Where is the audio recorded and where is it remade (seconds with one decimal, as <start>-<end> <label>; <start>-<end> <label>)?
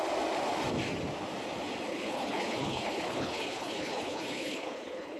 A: 0.0-1.9 recorded; 1.9-5.2 remade